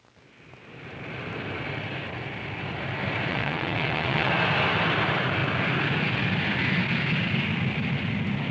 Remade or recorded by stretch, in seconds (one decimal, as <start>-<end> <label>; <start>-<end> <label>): 0.0-3.3 recorded; 3.3-4.3 remade; 4.3-8.5 recorded